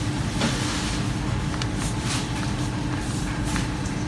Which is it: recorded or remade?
recorded